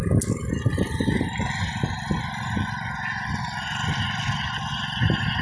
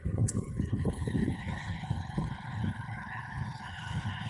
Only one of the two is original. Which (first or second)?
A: first